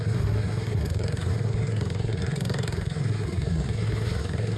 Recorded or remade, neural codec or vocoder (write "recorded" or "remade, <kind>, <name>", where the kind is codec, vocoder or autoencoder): remade, codec, SNAC